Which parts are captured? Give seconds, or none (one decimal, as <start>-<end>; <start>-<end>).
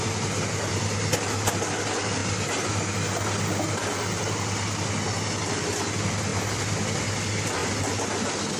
0.0-8.6